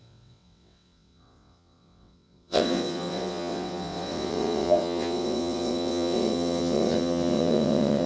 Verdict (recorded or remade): remade